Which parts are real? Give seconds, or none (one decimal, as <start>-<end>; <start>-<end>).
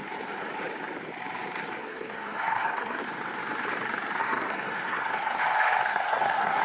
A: 0.0-1.8; 3.0-4.2; 5.4-5.9